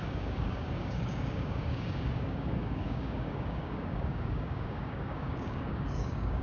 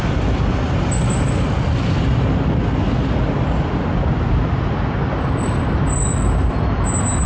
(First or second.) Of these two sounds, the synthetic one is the first